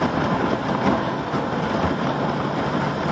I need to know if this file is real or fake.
real